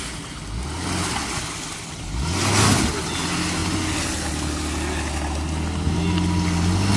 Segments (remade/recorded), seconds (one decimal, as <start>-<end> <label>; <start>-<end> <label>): 0.0-7.0 recorded